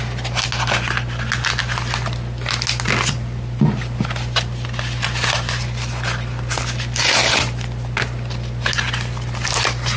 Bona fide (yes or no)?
yes